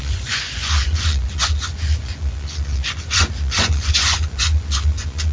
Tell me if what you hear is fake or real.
fake